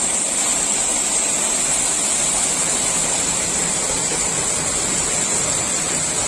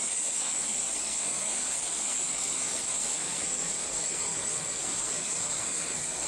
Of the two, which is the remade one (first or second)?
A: second